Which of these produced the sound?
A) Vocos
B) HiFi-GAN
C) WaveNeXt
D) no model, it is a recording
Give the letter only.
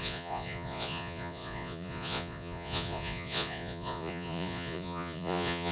A